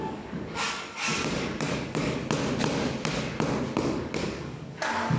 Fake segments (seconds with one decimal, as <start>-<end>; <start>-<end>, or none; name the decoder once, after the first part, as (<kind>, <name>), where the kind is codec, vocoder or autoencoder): 0.0-2.2 (codec, DAC); 3.8-5.2